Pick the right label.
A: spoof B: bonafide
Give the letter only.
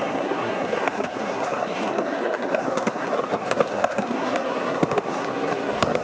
A